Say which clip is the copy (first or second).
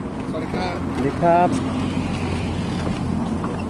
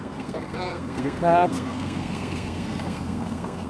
second